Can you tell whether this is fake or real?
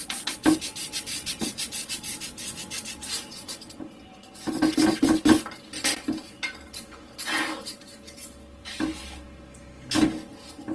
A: real